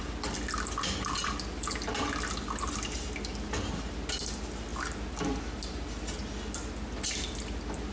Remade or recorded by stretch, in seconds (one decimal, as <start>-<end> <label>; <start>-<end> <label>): 0.0-7.9 recorded